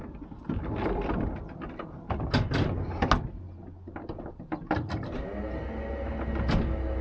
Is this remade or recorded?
recorded